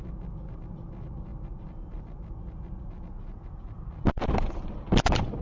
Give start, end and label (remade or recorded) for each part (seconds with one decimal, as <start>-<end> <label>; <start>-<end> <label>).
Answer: 0.0-5.4 recorded